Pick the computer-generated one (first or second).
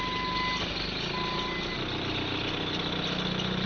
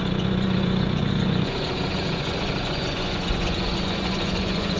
second